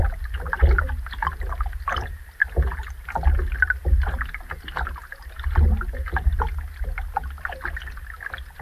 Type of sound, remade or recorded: recorded